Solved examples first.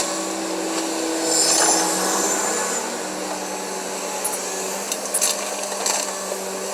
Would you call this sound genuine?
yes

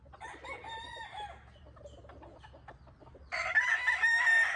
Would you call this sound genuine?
yes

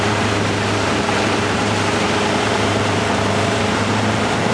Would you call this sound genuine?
no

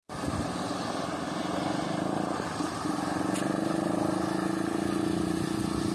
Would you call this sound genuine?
yes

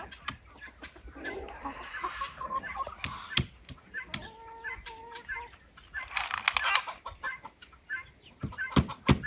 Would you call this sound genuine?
yes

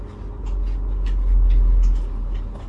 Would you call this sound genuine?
yes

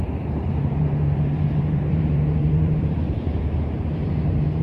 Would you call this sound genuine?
no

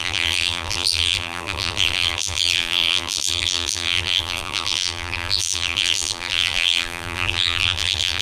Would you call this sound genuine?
no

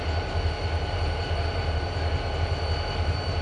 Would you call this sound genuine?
yes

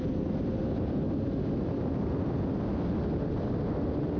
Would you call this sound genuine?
yes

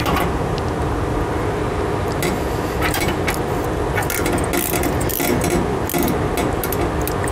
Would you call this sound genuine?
yes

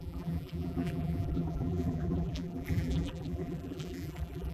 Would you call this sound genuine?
no